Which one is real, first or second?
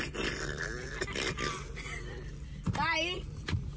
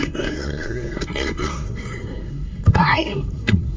first